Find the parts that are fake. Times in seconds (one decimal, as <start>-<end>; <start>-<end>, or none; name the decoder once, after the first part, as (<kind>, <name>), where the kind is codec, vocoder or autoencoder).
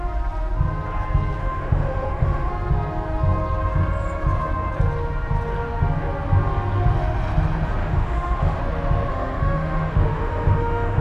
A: 1.4-2.5 (autoencoder, DAC-VAE); 7.8-8.6; 9.1-11.0